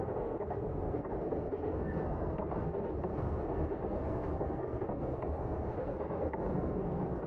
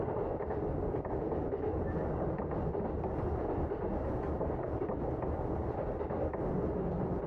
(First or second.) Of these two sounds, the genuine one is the second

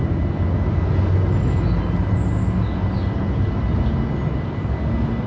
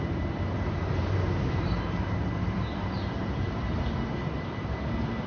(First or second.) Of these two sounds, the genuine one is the first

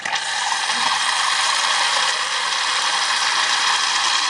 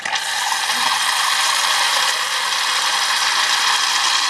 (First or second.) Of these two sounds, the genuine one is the second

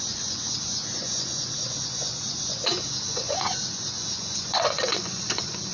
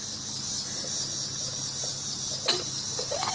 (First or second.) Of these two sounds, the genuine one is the second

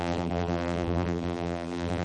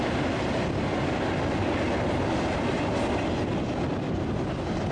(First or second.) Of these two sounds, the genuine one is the second